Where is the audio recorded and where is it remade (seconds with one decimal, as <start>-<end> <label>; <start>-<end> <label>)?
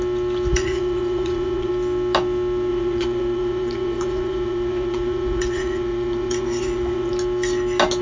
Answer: 0.0-0.5 recorded; 0.5-1.7 remade; 1.7-2.7 recorded; 2.7-7.1 remade; 7.1-8.0 recorded